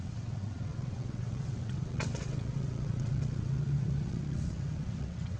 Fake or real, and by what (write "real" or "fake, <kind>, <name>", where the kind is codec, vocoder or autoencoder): fake, vocoder, WaveNeXt